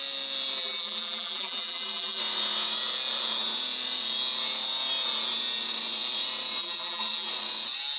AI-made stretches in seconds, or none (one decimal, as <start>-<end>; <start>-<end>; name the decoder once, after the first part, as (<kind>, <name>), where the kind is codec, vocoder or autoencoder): 0.6-2.2 (vocoder, BigVGAN v2); 6.6-7.3